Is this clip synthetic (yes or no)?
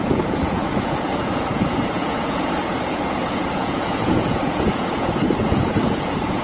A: yes